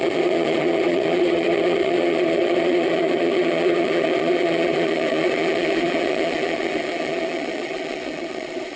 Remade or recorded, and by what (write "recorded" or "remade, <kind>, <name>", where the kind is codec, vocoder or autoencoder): remade, vocoder, Vocos